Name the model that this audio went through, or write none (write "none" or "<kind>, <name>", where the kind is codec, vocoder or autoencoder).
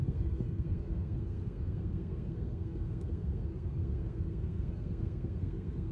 codec, SNAC